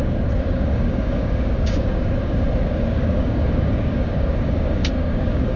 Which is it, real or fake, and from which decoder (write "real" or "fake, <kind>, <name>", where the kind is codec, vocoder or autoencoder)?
fake, codec, DAC